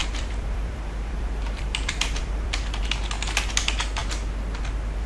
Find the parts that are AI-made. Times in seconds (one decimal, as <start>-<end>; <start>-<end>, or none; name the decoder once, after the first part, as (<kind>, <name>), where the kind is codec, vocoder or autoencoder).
0.0-2.8 (vocoder, BigVGAN v2)